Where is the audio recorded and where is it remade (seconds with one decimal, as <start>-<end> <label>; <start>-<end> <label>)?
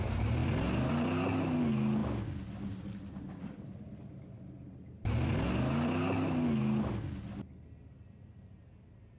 0.0-9.2 recorded